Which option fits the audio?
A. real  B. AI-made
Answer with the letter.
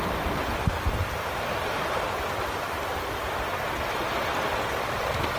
A